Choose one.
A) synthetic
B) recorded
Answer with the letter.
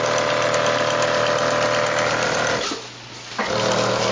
B